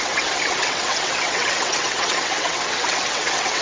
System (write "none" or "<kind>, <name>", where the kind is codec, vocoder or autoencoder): vocoder, WaveNeXt